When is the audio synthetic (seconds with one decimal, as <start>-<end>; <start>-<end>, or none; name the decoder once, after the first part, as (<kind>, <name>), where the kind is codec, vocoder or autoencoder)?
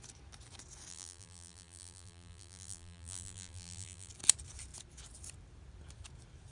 0.9-4.1 (vocoder, BigVGAN v2)